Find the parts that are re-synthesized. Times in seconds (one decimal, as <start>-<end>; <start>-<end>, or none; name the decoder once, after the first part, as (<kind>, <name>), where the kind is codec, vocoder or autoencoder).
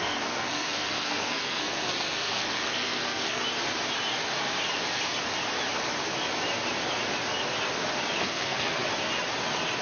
0.0-3.4 (codec, SNAC); 8.2-8.8